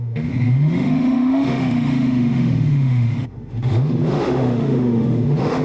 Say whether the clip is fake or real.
fake